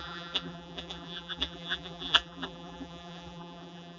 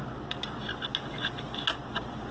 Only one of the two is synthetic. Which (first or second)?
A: first